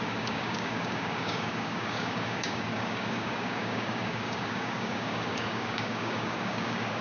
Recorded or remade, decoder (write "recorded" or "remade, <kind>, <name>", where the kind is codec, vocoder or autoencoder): remade, codec, DAC